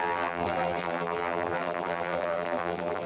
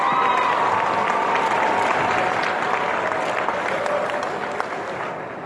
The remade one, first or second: first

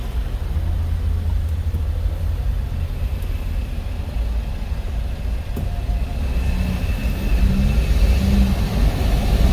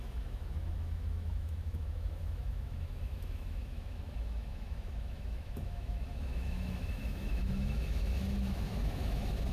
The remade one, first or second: second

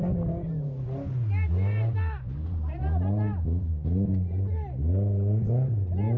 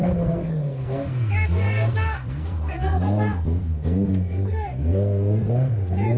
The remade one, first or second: second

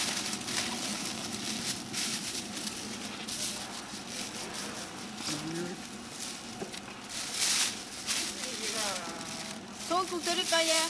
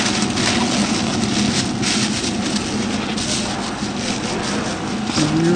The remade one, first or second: first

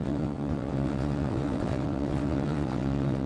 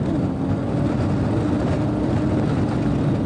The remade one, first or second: first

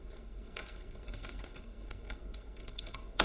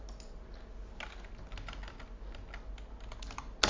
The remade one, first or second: first